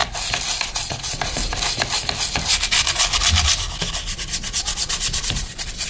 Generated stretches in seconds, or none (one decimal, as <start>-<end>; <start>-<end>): 0.6-1.4; 4.1-5.9